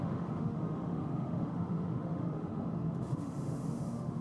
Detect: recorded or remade remade